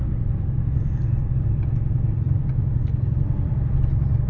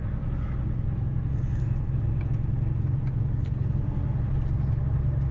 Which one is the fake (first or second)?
first